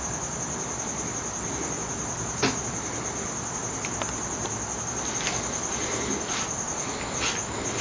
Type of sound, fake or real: real